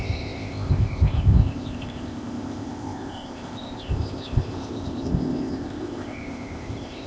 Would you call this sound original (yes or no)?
no